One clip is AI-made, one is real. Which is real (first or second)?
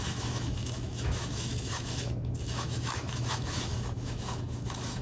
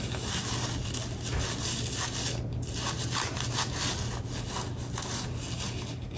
second